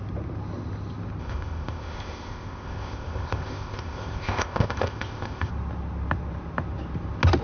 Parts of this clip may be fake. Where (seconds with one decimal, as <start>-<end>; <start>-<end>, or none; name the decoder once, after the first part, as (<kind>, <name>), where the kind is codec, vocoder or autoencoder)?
1.2-5.5 (codec, ZipCodec)